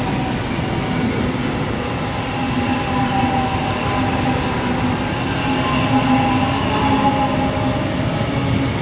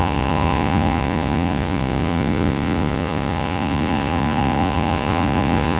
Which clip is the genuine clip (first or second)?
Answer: first